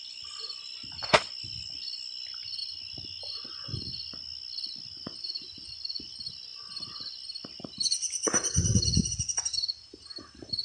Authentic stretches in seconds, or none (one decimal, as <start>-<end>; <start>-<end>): 0.0-10.6